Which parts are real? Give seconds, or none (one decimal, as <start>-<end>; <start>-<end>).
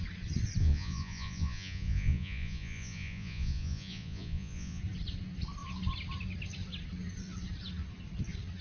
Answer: 0.0-0.6; 4.8-8.6